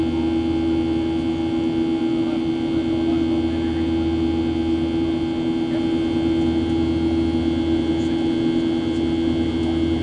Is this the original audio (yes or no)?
yes